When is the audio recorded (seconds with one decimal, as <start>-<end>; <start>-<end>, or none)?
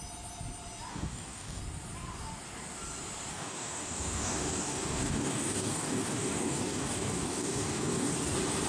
0.0-0.9; 1.6-3.3; 8.1-8.7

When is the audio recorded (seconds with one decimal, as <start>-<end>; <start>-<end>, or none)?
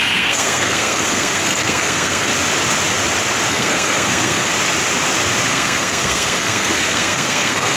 2.3-3.5; 4.5-5.5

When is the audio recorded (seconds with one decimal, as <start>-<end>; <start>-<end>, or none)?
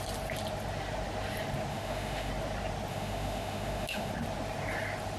0.0-1.7; 2.3-2.9; 4.1-5.2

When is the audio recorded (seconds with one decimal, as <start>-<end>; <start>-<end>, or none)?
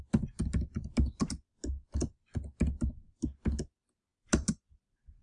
0.0-5.2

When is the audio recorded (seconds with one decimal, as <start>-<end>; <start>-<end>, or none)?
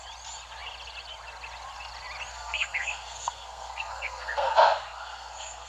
0.0-2.3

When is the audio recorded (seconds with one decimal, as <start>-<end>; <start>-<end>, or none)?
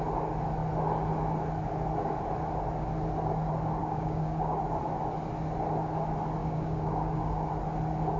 0.0-3.8; 4.6-6.4; 7.5-8.2